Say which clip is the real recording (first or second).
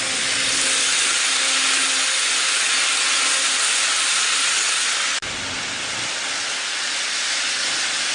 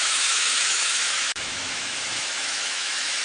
first